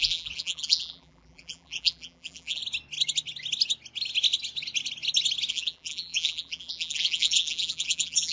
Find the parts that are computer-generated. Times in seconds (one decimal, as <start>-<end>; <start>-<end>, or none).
0.0-2.6; 5.5-8.3